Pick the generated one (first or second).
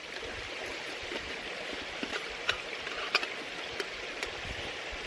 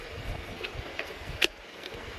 second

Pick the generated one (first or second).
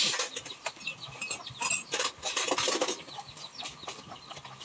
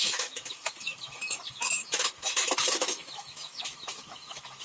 second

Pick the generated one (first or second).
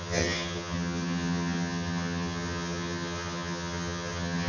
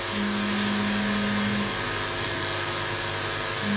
first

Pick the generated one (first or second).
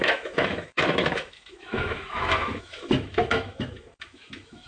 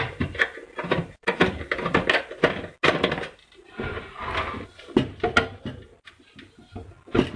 first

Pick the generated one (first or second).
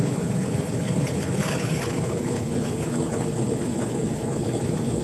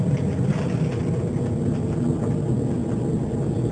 first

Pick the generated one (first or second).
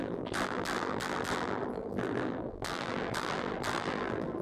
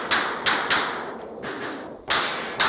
first